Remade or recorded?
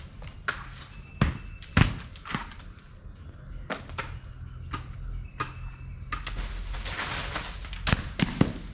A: recorded